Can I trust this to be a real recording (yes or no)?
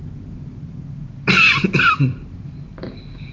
yes